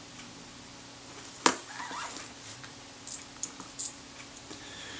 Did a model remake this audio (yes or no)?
no